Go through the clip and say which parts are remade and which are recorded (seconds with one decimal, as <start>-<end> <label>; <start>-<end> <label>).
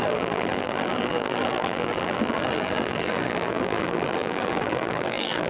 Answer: 0.0-5.5 remade